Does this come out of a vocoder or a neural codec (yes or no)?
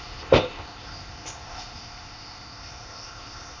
yes